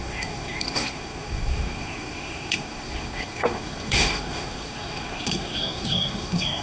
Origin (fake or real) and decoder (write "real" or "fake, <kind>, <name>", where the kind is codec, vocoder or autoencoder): fake, codec, SNAC